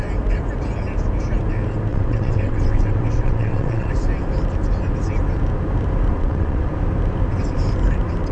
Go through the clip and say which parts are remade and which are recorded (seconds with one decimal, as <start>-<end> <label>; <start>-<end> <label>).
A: 0.0-1.9 recorded; 1.9-3.9 remade; 3.9-6.1 recorded; 6.1-6.7 remade; 6.7-8.3 recorded

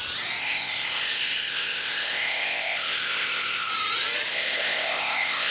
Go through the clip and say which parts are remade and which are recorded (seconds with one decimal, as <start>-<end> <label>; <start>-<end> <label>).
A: 0.0-0.4 recorded; 0.4-3.7 remade; 3.7-4.3 recorded; 4.3-5.5 remade

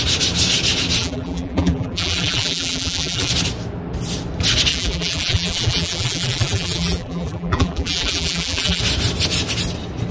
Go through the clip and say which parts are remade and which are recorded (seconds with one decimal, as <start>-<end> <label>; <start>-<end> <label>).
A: 0.0-1.0 recorded; 1.0-3.3 remade; 3.3-4.7 recorded; 4.7-8.8 remade; 8.8-10.1 recorded

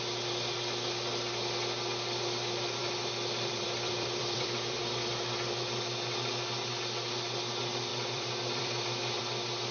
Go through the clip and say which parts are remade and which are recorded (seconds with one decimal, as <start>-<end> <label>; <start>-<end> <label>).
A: 0.0-2.8 recorded; 2.8-4.8 remade; 4.8-7.9 recorded; 7.9-9.2 remade; 9.2-9.7 recorded

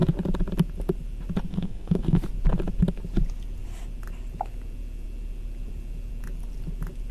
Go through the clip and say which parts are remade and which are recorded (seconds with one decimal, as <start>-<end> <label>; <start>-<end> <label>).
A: 0.0-1.5 recorded; 1.5-2.2 remade; 2.2-7.1 recorded

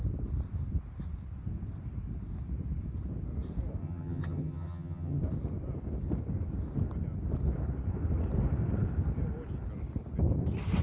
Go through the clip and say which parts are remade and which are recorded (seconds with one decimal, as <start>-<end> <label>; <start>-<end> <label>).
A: 0.0-3.8 recorded; 3.8-5.2 remade; 5.2-10.8 recorded